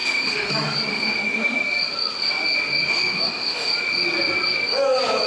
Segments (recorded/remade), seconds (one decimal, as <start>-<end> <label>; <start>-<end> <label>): 0.0-0.5 remade; 0.5-0.9 recorded; 0.9-1.6 remade; 1.6-2.9 recorded; 2.9-3.7 remade; 3.7-5.3 recorded